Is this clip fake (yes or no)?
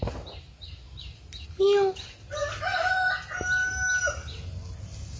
no